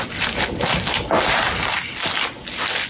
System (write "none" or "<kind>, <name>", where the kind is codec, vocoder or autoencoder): none